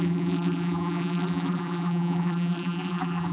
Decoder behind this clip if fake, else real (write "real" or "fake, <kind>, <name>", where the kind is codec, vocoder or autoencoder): fake, vocoder, BigVGAN v2